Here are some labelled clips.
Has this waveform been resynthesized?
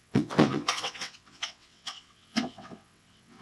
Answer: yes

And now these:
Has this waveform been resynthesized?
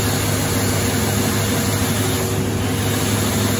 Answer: no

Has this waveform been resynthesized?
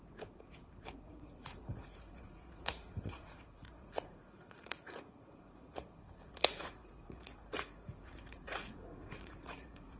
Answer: yes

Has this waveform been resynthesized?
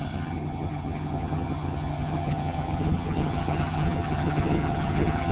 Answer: yes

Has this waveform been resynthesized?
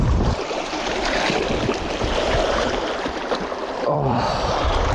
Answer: yes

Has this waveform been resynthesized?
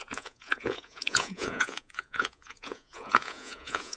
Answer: yes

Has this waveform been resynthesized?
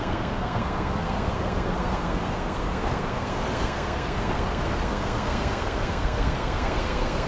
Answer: yes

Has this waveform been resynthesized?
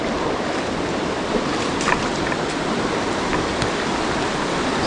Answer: yes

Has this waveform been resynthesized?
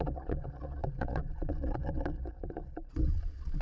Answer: yes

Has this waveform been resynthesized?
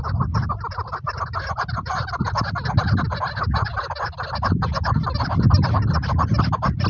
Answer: no